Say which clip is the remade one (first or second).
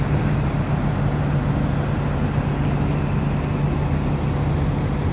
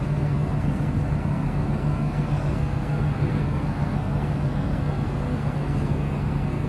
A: second